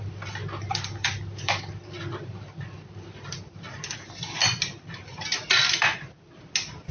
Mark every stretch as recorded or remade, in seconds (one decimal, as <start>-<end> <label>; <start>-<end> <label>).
0.0-3.5 remade; 3.5-6.9 recorded